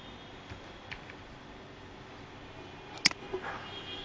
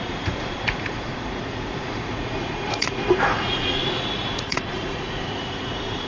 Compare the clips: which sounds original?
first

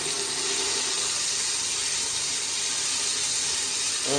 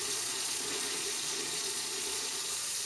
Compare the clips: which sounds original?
first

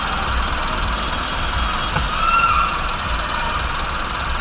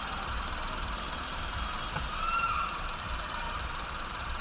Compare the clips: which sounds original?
first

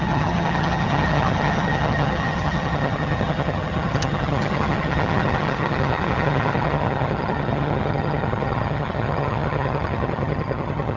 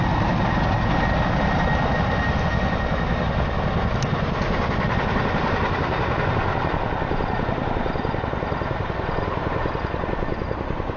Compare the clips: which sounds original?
second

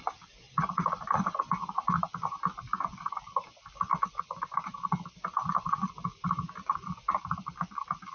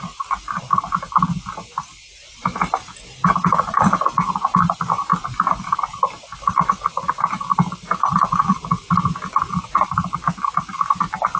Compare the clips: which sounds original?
second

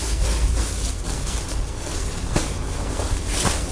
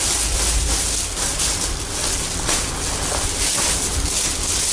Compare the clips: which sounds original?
second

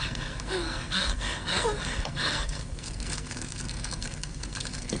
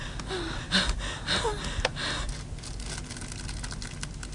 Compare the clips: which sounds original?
second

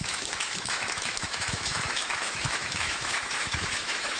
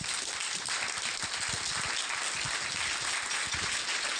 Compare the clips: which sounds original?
second